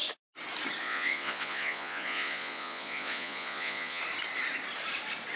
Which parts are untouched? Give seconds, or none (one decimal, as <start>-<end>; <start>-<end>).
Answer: 0.0-0.8; 4.0-5.4